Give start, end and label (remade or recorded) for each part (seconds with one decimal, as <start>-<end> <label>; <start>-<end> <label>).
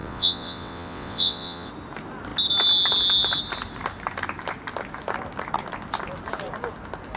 0.0-1.7 remade; 1.7-7.2 recorded